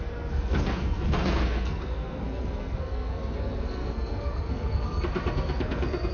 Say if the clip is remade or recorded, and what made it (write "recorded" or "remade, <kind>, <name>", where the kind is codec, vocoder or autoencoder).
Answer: remade, codec, SNAC